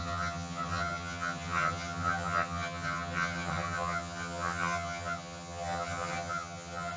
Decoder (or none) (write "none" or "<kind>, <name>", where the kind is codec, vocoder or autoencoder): vocoder, HiFi-GAN